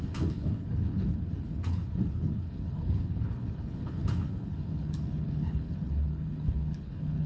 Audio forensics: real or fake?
fake